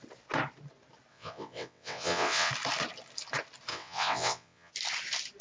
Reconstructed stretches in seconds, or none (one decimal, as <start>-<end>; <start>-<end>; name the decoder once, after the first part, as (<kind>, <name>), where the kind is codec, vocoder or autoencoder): 1.1-2.5 (vocoder, WaveNeXt); 3.7-4.7